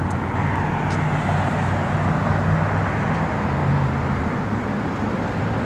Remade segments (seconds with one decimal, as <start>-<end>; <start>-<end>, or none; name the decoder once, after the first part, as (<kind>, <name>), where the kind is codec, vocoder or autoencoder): 3.6-4.2 (vocoder, BigVGAN v2)